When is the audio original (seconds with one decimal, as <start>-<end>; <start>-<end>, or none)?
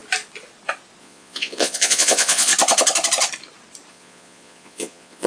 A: 0.0-1.0; 2.5-3.9